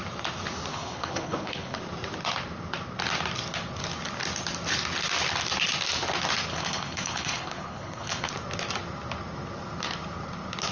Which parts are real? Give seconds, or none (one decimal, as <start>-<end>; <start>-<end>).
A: 0.0-0.7; 1.8-6.5; 8.3-10.7